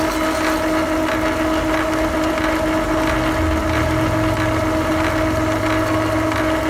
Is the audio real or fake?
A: real